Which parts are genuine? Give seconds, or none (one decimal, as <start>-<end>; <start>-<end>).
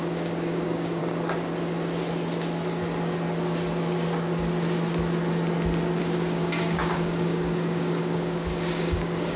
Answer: 1.0-6.0